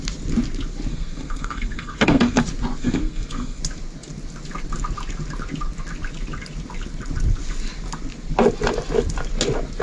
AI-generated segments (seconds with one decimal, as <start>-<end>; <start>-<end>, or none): 0.9-2.4; 2.8-3.6